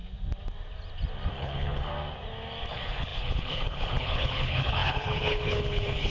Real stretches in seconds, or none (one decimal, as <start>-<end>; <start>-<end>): 0.0-1.3; 1.9-2.7